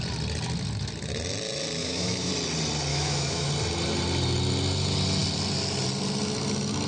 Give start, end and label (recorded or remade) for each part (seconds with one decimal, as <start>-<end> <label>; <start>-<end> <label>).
0.0-1.8 recorded; 1.8-2.3 remade; 2.3-2.9 recorded; 2.9-3.5 remade; 3.5-6.9 recorded